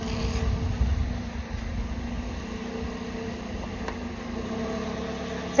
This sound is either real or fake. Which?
real